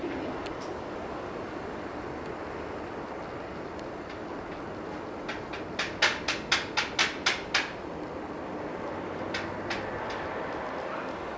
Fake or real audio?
real